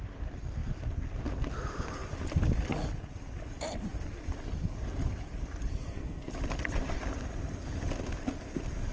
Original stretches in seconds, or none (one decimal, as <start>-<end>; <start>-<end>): 0.0-5.7; 6.3-8.9